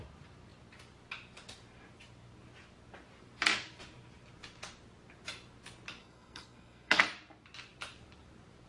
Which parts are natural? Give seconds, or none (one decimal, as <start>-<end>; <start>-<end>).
0.0-6.0; 7.0-8.7